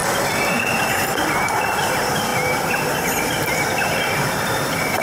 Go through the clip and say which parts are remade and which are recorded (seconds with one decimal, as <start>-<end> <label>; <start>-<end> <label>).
0.0-1.5 recorded; 1.5-5.0 remade